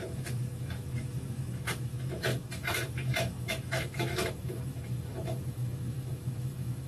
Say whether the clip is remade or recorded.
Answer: remade